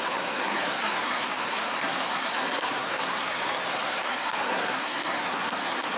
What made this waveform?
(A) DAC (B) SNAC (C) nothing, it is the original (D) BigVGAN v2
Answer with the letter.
B